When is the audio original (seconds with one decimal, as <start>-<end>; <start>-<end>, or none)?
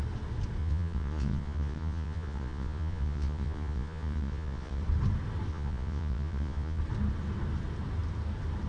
0.0-0.6; 4.8-5.5; 6.8-8.7